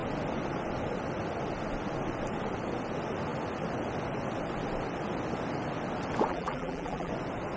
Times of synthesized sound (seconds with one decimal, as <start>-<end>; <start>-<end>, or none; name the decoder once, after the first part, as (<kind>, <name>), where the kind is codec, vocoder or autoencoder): 6.3-7.1 (vocoder, BigVGAN v2)